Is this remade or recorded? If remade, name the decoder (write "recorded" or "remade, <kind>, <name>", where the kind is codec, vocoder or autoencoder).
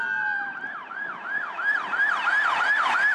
remade, vocoder, BigVGAN v2